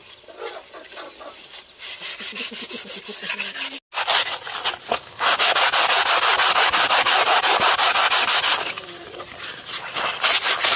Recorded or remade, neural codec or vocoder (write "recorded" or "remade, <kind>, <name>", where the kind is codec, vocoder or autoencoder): recorded